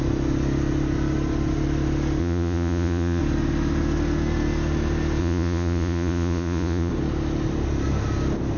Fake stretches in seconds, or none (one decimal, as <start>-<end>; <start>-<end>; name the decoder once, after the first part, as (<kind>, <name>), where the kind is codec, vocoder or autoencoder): 2.2-3.2 (vocoder, Vocos); 5.2-6.9